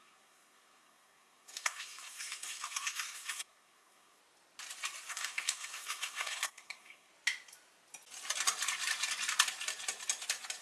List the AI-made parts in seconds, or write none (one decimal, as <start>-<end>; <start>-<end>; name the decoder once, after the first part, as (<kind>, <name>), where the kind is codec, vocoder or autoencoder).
0.0-4.2 (codec, SNAC); 5.1-7.1